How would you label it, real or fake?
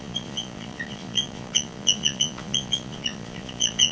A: fake